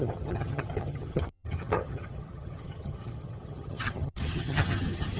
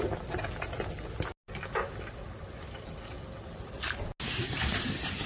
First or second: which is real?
second